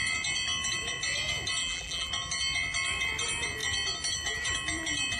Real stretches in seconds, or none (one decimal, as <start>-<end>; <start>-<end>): 0.0-1.6; 2.1-5.2